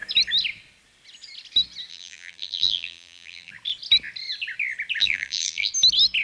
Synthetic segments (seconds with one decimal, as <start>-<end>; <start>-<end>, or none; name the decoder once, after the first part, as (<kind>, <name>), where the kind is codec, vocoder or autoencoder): 1.9-3.5 (vocoder, BigVGAN v2); 5.0-5.7

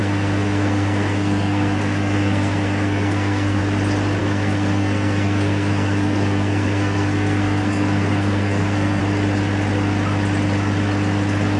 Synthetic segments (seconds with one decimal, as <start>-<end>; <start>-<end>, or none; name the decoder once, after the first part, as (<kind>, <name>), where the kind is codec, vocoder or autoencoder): 0.0-3.6 (codec, SNAC); 4.2-9.0